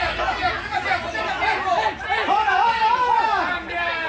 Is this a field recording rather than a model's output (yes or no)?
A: yes